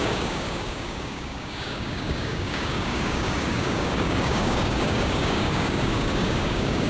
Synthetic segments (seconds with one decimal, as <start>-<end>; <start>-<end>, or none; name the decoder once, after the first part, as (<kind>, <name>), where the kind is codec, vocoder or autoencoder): 0.0-6.9 (codec, DAC)